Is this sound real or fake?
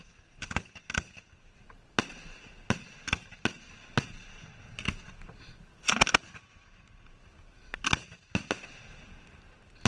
real